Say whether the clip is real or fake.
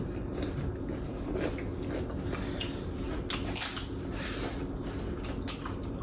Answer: real